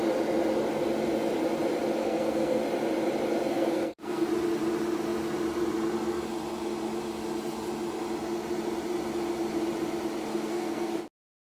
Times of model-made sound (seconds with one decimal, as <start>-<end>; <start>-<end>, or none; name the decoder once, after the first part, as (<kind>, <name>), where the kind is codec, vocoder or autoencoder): 2.0-2.6 (codec, SNAC); 3.5-4.3; 10.3-10.9